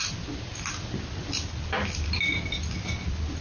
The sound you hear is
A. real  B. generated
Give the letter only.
A